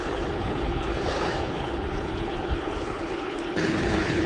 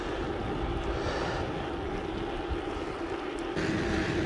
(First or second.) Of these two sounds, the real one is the second